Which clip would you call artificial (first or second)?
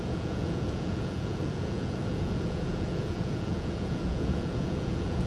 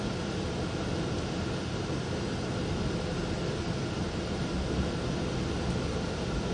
first